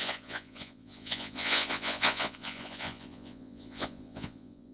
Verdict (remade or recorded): remade